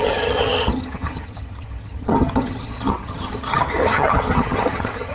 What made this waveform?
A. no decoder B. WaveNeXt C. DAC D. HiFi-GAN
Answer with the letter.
D